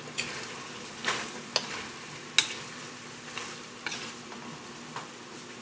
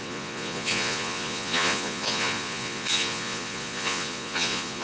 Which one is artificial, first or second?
second